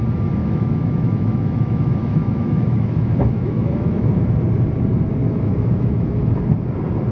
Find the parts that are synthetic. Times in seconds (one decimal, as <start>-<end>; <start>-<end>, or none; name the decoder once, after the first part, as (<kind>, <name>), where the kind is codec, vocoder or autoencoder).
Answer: 0.4-4.1 (autoencoder, DAC-VAE); 5.2-6.4